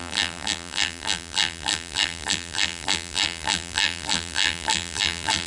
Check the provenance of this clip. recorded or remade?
remade